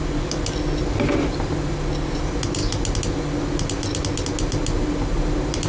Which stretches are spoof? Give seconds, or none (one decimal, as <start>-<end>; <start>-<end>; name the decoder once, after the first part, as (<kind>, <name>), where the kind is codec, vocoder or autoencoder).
none